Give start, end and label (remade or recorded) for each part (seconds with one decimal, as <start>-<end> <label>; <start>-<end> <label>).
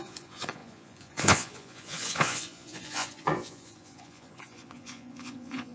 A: 0.0-5.7 remade